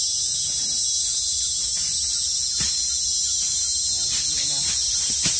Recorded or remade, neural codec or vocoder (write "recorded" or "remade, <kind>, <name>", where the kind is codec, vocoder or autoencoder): recorded